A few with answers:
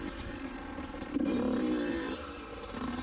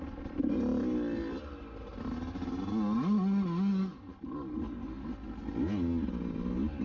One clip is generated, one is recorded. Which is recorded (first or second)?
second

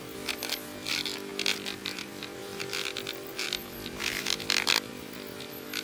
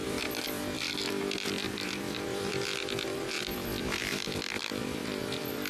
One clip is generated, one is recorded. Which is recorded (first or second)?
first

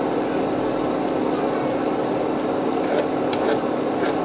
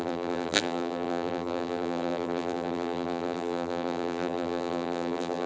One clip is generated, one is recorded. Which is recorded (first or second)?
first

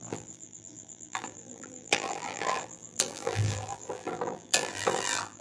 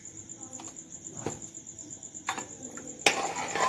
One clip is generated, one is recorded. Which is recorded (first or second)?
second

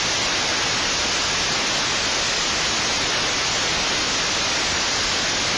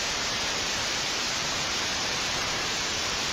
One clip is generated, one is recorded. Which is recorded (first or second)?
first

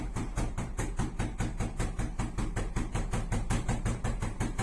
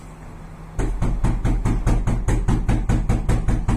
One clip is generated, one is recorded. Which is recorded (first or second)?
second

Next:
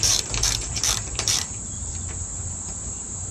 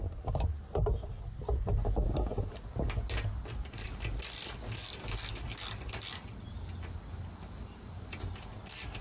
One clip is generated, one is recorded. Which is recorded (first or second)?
second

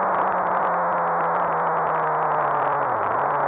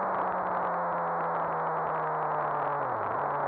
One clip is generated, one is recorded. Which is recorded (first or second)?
second